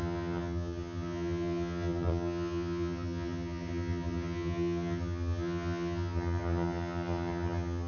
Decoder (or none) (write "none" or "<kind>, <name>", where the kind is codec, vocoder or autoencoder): vocoder, HiFi-GAN